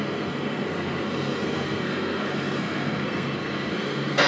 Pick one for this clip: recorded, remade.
remade